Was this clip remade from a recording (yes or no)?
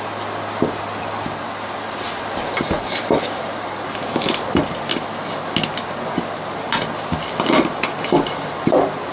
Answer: no